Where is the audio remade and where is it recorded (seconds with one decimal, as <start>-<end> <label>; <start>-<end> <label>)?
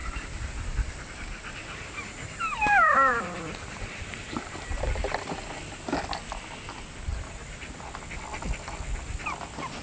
0.0-0.9 remade; 0.9-1.6 recorded; 1.6-5.4 remade; 5.4-7.1 recorded; 7.1-7.8 remade; 7.8-9.8 recorded